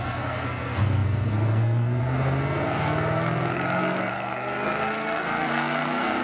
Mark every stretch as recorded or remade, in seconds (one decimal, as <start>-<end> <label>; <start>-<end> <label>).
0.0-6.2 remade